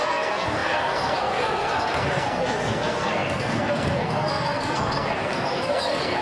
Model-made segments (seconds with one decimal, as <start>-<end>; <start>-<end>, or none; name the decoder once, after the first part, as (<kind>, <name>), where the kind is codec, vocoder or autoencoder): 0.0-6.2 (codec, SNAC)